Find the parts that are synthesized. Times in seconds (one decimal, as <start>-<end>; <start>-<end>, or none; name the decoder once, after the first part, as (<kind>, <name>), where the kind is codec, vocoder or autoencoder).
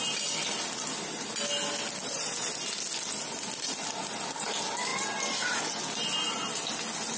none